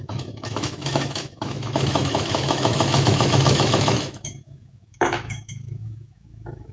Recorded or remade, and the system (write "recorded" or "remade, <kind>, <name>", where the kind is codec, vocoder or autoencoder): remade, autoencoder, DAC-VAE